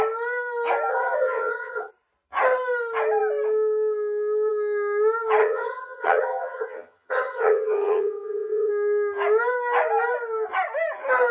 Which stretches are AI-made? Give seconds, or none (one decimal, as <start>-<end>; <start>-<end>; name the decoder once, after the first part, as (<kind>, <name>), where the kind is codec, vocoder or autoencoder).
0.9-1.9 (vocoder, HiFi-GAN); 5.4-8.7